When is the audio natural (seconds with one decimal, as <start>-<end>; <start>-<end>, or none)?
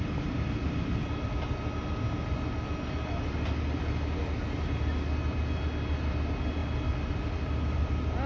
0.0-8.3